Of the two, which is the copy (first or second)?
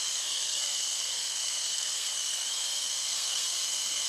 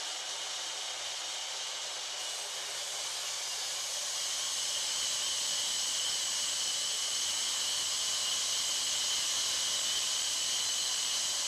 first